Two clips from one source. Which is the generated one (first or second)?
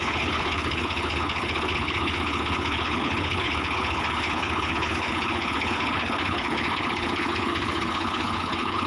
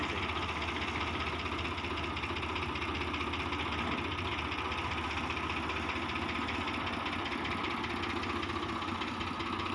first